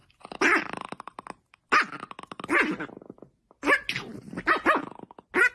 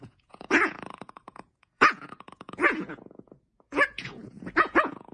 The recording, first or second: first